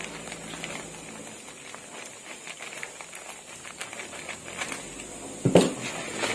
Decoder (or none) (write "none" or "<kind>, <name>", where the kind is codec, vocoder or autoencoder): none